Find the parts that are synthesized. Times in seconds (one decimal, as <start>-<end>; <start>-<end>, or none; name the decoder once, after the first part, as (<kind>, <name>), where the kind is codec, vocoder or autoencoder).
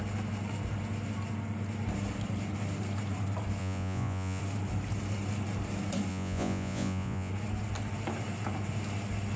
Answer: 3.6-4.4 (vocoder, Vocos); 6.1-7.3